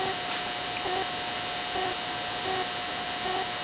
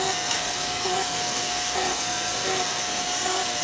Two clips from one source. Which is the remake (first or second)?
second